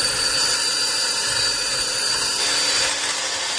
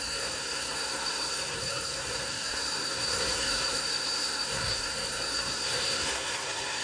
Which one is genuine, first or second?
first